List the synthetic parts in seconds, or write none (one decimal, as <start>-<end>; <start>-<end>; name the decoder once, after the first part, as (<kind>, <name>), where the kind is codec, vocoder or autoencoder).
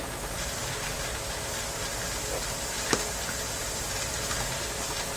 3.6-4.1 (vocoder, BigVGAN v2)